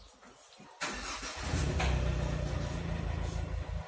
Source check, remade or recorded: recorded